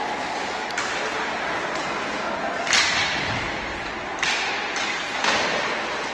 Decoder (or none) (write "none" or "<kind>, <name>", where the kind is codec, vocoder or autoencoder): none